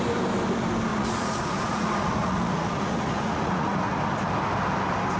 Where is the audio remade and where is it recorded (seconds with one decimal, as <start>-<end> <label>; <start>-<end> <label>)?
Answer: 0.0-0.9 recorded; 0.9-4.0 remade; 4.0-5.2 recorded